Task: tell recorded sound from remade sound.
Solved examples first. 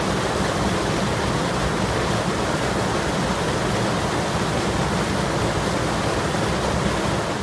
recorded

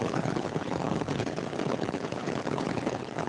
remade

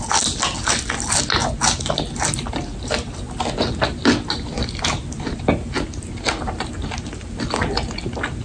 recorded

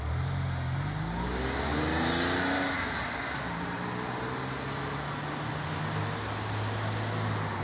recorded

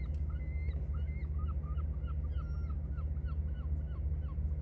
recorded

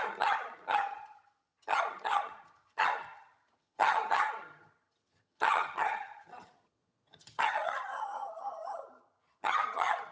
remade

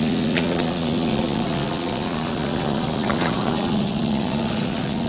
remade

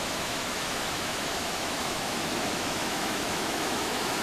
remade